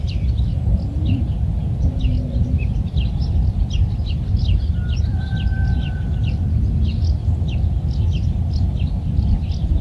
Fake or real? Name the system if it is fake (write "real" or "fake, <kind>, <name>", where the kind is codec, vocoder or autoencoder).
real